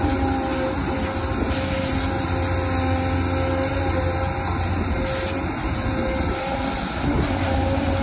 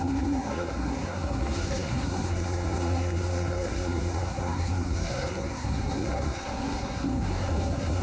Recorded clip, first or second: first